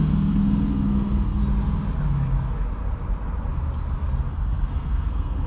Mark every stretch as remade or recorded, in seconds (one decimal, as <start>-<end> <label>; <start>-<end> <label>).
0.0-1.4 remade; 1.4-4.3 recorded; 4.3-5.5 remade